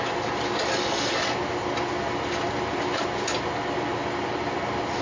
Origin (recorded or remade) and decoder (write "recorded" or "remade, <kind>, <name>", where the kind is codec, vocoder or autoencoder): recorded